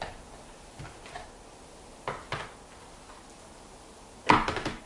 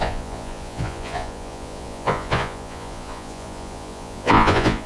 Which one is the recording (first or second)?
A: first